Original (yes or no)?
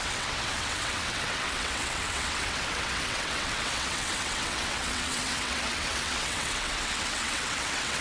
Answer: no